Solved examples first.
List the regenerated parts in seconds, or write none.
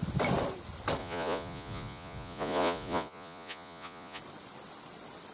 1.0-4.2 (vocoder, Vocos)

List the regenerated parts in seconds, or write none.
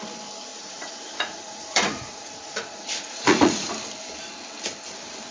0.5-3.7 (vocoder, Vocos)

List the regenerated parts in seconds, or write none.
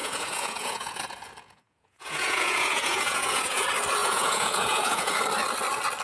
0.0-3.6 (vocoder, Vocos); 4.0-5.2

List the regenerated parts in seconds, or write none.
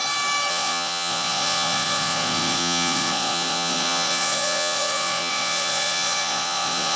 0.5-7.0 (vocoder, Vocos)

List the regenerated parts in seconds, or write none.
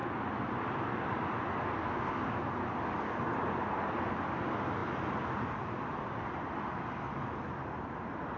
none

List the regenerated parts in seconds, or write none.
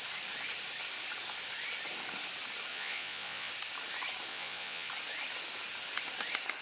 2.7-3.5 (vocoder, Vocos); 4.3-4.9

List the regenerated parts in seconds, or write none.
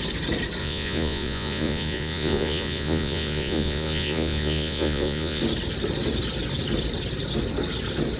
0.6-5.4 (vocoder, Vocos)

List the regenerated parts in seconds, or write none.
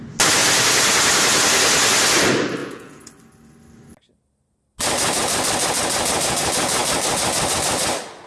2.6-3.1 (vocoder, Vocos)